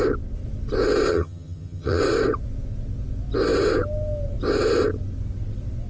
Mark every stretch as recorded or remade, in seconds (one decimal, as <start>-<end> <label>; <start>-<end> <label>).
0.0-1.1 recorded; 1.1-2.0 remade; 2.0-5.9 recorded